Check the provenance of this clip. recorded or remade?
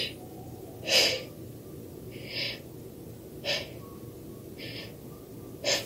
recorded